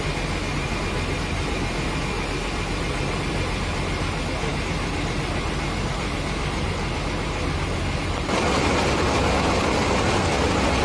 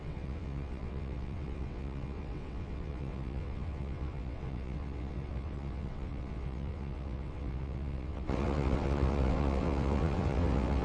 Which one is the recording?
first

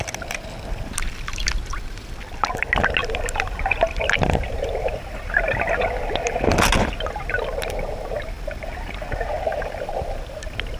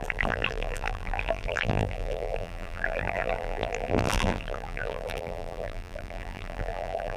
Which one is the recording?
first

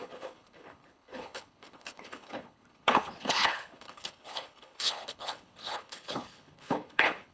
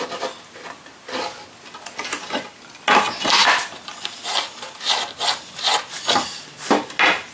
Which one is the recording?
second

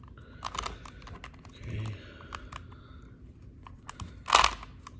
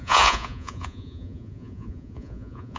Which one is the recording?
first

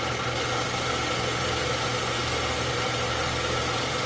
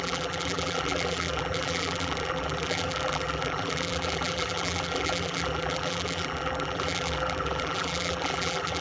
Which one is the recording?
first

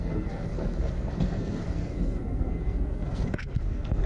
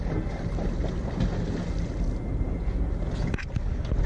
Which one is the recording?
second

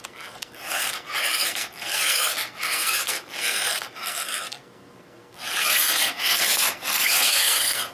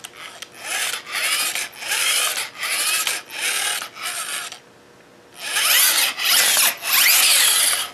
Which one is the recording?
second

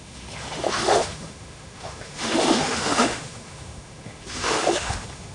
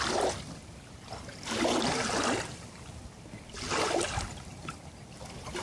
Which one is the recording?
second